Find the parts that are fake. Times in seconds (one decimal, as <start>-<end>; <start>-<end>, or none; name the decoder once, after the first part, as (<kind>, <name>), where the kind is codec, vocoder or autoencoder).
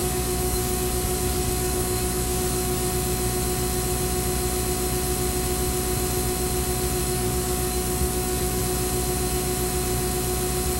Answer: 0.0-2.9 (codec, DAC); 7.0-8.6